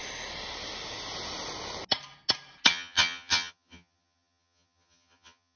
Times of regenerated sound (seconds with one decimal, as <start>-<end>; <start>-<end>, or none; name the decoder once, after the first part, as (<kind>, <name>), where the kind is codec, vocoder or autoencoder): 2.7-5.6 (vocoder, HiFi-GAN)